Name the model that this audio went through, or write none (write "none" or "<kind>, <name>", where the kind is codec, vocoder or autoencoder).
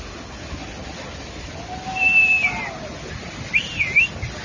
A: none